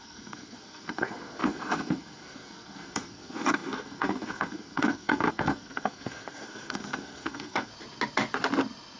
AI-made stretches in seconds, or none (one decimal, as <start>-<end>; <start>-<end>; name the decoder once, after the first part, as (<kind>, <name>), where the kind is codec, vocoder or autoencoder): 0.0-7.7 (codec, SNAC)